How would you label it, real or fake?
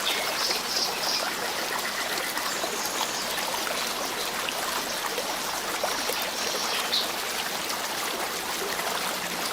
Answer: real